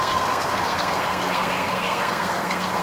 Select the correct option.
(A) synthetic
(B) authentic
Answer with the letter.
A